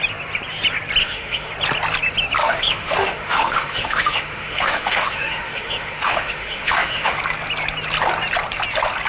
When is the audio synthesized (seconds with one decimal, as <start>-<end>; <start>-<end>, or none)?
1.0-1.5; 2.4-7.2

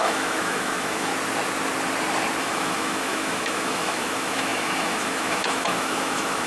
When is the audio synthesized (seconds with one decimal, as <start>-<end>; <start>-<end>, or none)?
0.0-1.1; 2.4-6.5

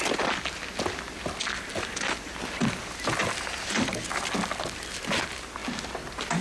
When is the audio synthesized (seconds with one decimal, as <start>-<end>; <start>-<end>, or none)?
none

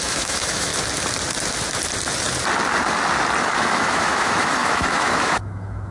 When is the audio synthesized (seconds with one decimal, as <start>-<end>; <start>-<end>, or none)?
0.0-0.7; 3.4-5.9

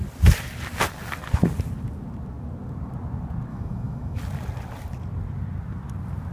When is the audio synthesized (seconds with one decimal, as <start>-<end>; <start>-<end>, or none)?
3.5-4.2